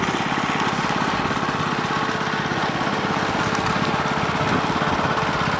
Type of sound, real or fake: real